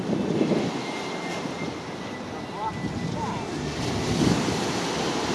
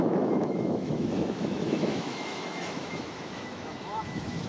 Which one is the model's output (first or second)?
second